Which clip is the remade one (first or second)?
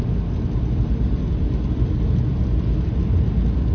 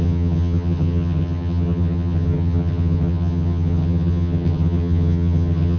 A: second